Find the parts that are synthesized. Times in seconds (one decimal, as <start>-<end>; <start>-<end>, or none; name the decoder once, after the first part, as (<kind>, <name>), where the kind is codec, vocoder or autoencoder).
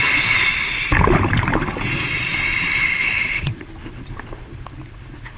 none